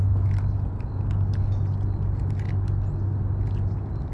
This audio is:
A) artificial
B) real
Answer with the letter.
B